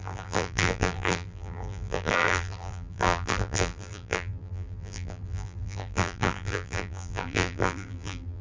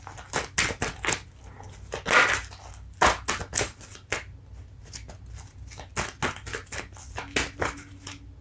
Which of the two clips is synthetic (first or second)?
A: first